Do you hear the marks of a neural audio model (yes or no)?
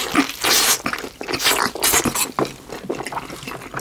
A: no